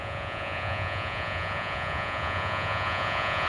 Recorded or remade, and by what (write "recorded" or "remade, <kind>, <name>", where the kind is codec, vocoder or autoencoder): remade, vocoder, Vocos